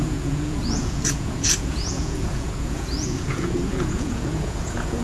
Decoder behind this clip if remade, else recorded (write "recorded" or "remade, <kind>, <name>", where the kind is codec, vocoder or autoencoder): remade, vocoder, Vocos